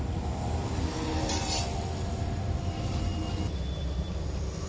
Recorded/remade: recorded